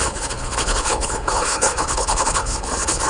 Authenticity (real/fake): fake